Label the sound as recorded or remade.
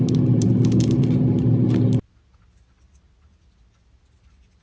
recorded